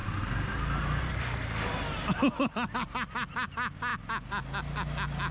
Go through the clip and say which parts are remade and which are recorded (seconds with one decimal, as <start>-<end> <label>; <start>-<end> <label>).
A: 0.0-1.0 remade; 1.0-5.3 recorded

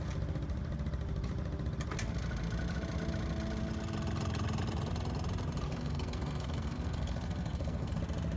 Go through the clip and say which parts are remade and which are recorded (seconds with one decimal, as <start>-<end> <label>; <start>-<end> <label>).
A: 0.0-5.7 recorded; 5.7-8.0 remade; 8.0-8.4 recorded

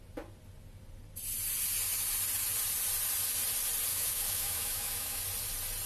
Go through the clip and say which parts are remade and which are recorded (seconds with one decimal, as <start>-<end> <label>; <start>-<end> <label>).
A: 0.0-3.9 recorded; 3.9-5.2 remade; 5.2-5.9 recorded

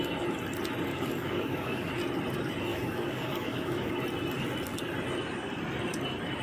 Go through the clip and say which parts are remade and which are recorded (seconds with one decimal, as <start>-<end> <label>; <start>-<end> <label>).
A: 0.0-0.9 recorded; 0.9-1.9 remade; 1.9-2.7 recorded; 2.7-4.0 remade; 4.0-6.4 recorded

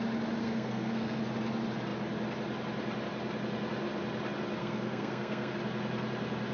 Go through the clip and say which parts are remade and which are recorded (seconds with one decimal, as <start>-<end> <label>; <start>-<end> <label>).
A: 0.0-0.4 recorded; 0.4-1.2 remade; 1.2-4.6 recorded; 4.6-5.6 remade; 5.6-6.5 recorded

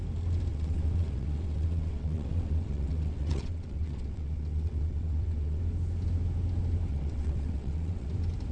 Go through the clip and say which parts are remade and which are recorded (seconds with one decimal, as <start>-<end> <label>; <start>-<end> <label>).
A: 0.0-0.5 recorded; 0.5-5.6 remade; 5.6-6.9 recorded; 6.9-8.1 remade; 8.1-8.5 recorded